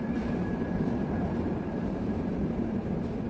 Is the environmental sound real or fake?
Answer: fake